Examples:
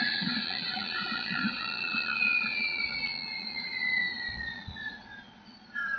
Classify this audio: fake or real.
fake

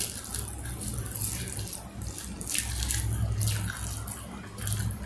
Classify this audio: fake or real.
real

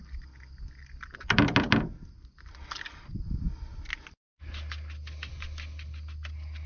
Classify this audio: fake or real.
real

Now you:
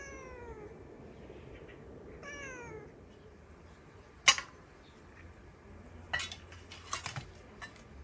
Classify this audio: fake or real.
real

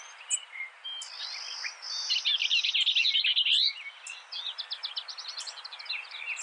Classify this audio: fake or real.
real